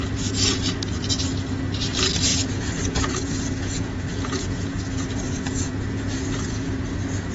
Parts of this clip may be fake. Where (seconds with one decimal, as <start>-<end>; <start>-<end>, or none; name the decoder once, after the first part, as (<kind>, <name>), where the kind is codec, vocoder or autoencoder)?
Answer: 2.3-6.7 (vocoder, Vocos)